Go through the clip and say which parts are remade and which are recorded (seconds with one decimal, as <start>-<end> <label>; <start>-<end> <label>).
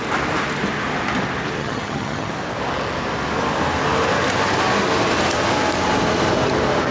0.0-1.6 recorded; 1.6-2.3 remade; 2.3-6.9 recorded